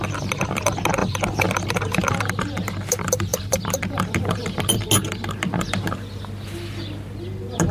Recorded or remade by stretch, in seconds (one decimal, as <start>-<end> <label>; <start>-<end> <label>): 0.0-1.0 recorded; 1.0-2.3 remade; 2.3-3.3 recorded; 3.3-3.8 remade; 3.8-7.7 recorded